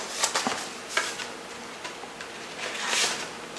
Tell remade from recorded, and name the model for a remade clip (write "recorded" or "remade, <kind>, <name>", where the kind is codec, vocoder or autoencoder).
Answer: recorded